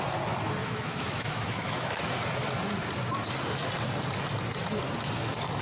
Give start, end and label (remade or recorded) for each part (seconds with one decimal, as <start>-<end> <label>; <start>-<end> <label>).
0.0-0.6 recorded; 0.6-2.0 remade; 2.0-5.6 recorded